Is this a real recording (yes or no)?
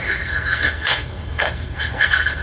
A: no